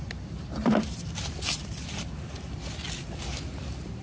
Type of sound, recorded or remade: recorded